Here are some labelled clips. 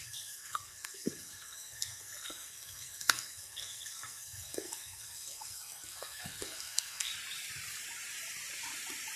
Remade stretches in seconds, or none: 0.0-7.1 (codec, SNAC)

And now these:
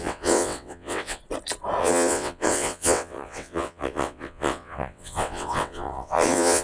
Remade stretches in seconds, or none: 0.0-1.2 (vocoder, WaveNeXt); 1.8-6.6